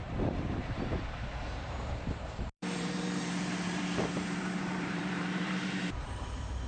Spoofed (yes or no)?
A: yes